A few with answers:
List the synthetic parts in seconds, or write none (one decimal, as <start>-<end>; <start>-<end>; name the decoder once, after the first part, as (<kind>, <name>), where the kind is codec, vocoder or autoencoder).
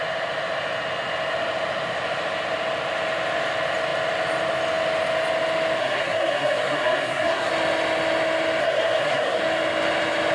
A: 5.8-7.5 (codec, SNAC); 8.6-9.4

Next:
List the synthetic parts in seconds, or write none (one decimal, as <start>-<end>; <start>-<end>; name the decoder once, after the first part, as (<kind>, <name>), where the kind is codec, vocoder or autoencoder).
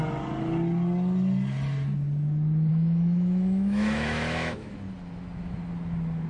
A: 2.7-4.7 (autoencoder, DAC-VAE)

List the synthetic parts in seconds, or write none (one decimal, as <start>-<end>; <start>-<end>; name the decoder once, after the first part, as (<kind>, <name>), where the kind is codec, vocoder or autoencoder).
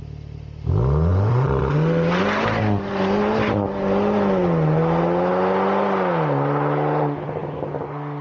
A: none